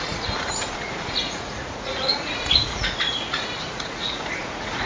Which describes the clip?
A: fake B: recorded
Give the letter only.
A